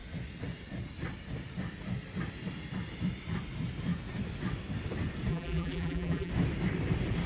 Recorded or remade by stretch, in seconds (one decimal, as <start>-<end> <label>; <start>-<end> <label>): 0.0-5.3 recorded; 5.3-6.3 remade; 6.3-7.3 recorded